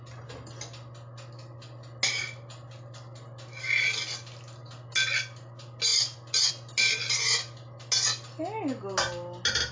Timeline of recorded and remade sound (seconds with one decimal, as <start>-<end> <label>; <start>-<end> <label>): 0.0-9.7 recorded